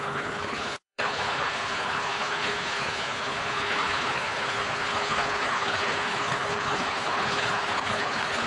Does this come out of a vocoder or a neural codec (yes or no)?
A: yes